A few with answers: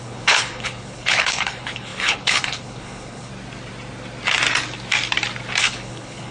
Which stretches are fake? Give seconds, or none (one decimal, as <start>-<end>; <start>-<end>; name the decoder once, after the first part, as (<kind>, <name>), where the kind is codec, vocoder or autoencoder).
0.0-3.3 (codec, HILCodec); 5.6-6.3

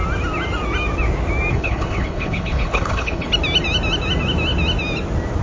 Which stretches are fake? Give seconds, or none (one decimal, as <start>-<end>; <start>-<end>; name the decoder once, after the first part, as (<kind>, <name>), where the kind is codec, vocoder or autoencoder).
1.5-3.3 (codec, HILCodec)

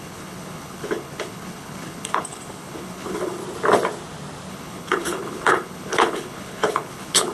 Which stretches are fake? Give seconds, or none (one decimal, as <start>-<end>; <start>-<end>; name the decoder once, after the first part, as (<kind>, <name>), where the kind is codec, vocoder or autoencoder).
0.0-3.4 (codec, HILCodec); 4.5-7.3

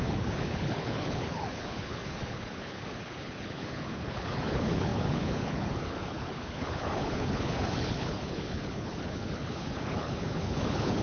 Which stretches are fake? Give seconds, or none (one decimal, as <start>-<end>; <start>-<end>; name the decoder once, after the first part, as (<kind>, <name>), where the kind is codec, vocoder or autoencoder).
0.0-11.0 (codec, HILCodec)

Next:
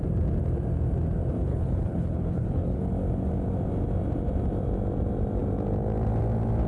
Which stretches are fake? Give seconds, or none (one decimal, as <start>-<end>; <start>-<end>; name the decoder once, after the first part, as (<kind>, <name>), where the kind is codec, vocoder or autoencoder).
1.5-2.8 (codec, HILCodec)